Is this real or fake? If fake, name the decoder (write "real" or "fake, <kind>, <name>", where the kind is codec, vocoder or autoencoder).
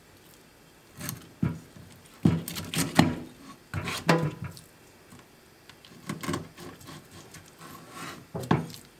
real